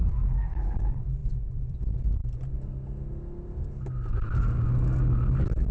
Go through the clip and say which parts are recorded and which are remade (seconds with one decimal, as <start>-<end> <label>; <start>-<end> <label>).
0.0-1.2 recorded; 1.2-1.8 remade; 1.8-5.7 recorded